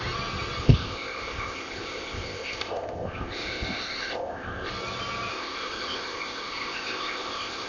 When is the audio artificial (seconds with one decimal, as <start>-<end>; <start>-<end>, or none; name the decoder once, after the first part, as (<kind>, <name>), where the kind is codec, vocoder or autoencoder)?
0.6-4.7 (codec, ZipCodec); 5.3-7.7